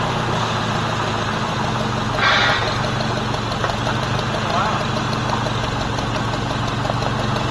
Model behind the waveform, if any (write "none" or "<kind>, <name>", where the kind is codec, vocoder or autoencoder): none